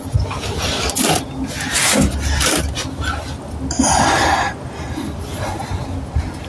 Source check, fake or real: real